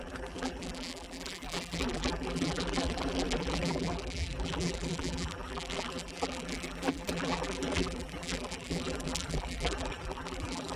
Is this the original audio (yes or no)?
no